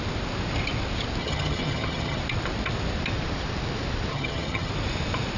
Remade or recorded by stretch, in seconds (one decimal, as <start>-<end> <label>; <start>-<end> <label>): 0.0-1.2 recorded; 1.2-2.2 remade; 2.2-4.1 recorded; 4.1-4.7 remade; 4.7-5.4 recorded